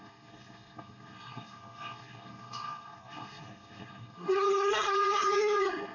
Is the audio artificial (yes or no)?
yes